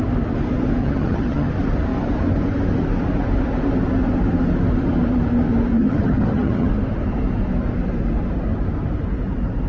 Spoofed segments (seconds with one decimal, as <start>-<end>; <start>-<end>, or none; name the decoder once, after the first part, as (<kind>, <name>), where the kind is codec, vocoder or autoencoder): 0.8-1.5 (vocoder, HiFi-GAN); 5.8-6.7